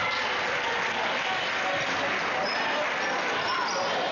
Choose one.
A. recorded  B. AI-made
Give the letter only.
A